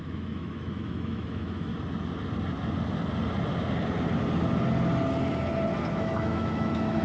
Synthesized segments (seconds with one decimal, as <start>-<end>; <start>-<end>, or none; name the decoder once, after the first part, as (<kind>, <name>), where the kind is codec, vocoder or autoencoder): 0.0-1.7 (autoencoder, DAC-VAE); 5.9-7.0